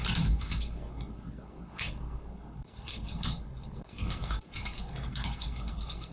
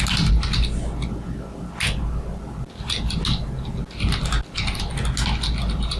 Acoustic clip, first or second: second